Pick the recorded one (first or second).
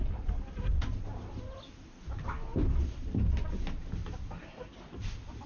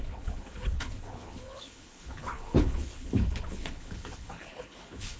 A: first